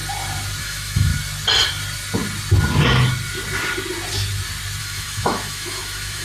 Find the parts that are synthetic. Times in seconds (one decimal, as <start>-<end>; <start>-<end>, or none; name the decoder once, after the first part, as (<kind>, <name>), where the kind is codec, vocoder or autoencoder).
0.6-1.1 (autoencoder, DAC-VAE); 4.8-6.2